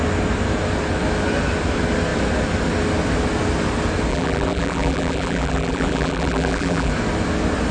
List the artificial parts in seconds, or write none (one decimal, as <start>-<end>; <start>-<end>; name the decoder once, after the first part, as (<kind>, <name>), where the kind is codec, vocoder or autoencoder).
4.1-6.9 (vocoder, BigVGAN v2)